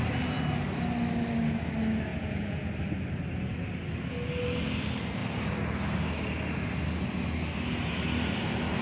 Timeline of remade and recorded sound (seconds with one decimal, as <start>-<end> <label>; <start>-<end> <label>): 0.0-2.1 recorded; 2.1-2.7 remade; 2.7-8.8 recorded